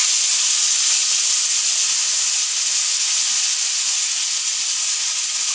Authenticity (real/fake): real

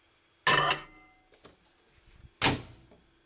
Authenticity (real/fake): real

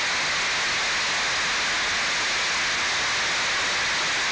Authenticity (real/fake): real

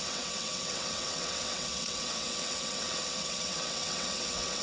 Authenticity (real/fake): fake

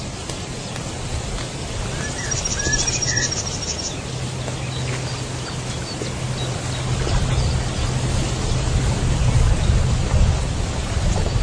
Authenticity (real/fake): real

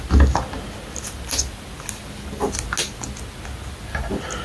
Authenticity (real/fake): real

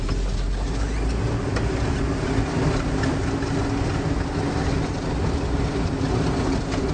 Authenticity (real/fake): real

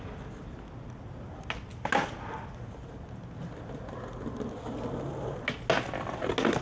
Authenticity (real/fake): real